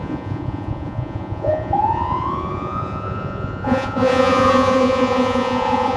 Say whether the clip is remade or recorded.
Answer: remade